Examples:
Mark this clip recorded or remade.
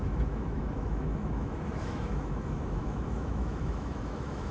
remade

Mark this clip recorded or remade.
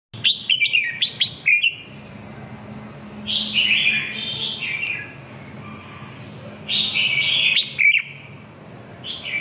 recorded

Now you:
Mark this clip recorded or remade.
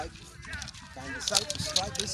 recorded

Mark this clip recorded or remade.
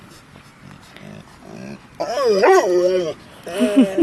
recorded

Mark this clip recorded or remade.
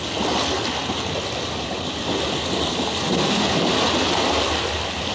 recorded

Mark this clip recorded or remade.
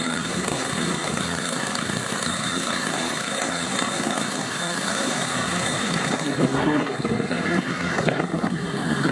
remade